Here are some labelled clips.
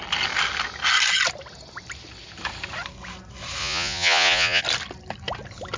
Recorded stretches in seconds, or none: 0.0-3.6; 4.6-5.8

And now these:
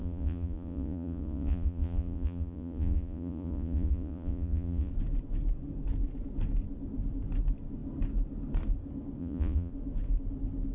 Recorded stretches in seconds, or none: 4.9-9.2; 9.7-10.7

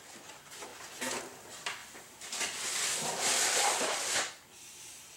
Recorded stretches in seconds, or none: 0.0-1.8; 4.3-5.2